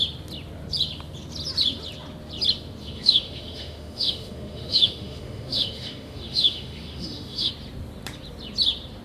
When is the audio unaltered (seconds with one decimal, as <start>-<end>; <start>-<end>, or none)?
0.0-2.8; 7.5-9.0